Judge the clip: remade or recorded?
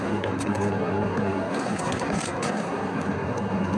remade